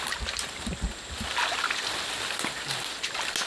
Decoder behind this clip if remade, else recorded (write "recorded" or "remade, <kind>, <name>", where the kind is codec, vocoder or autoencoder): recorded